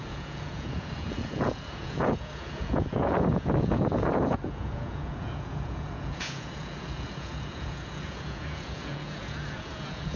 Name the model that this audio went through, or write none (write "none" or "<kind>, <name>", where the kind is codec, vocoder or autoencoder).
vocoder, Vocos